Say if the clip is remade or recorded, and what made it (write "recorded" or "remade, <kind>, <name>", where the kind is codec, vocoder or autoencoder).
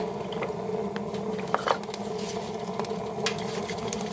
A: recorded